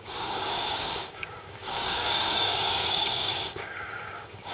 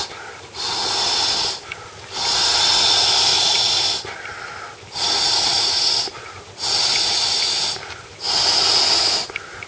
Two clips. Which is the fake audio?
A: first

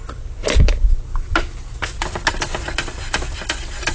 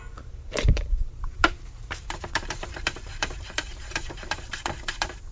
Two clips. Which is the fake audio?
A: second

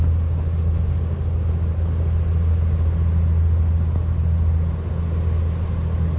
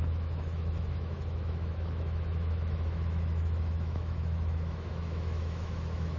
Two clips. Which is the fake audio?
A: second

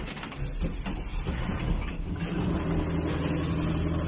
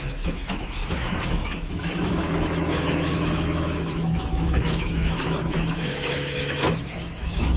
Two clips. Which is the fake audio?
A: second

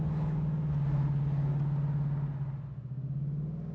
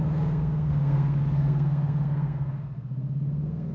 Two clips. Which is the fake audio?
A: second